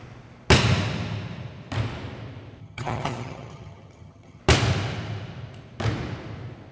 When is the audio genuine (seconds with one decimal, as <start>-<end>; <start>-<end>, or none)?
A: 0.0-2.6; 4.4-6.7